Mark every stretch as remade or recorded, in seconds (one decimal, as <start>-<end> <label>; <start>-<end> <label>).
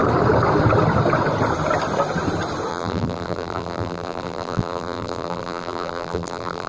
0.0-2.7 recorded; 2.7-6.7 remade